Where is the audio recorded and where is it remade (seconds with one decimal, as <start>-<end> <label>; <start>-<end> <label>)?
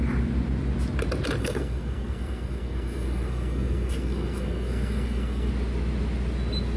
0.0-1.4 recorded; 1.4-5.5 remade; 5.5-6.8 recorded